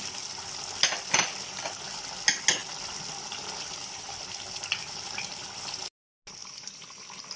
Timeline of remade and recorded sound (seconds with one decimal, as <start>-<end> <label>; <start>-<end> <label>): 0.0-7.4 recorded